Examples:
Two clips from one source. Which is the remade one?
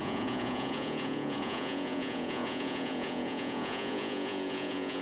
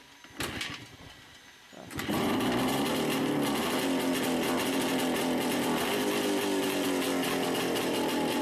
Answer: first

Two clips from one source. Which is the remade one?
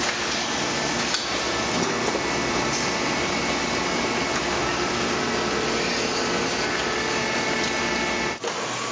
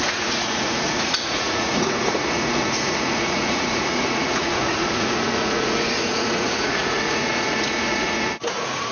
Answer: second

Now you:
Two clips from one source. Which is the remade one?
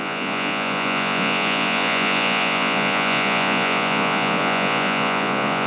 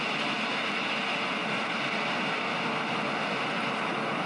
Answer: first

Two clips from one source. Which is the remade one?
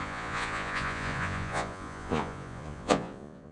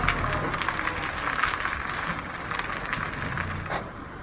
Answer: first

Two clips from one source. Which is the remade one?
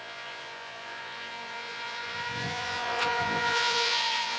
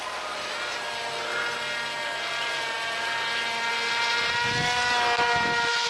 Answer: first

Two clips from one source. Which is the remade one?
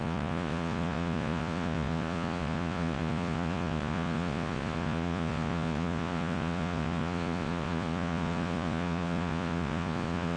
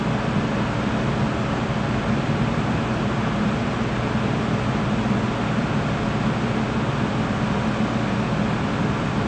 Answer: first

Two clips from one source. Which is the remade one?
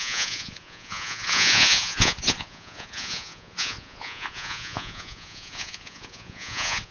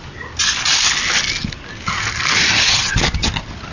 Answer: first